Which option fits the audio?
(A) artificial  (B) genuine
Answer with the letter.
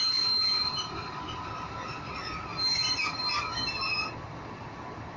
B